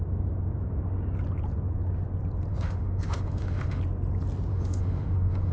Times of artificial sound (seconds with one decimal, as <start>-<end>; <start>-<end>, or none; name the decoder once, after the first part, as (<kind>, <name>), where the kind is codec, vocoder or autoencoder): 2.5-3.8 (autoencoder, DAC-VAE); 4.5-5.5